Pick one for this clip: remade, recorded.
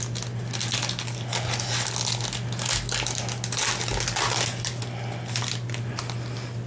recorded